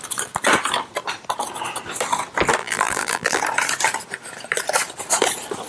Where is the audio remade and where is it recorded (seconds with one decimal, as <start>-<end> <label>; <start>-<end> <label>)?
0.0-2.6 recorded; 2.6-3.4 remade; 3.4-5.7 recorded